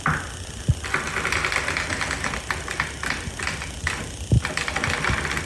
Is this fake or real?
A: real